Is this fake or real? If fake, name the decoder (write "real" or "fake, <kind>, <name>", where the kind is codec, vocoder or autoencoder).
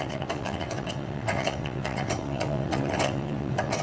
fake, vocoder, WaveNeXt